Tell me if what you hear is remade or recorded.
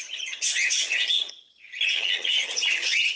remade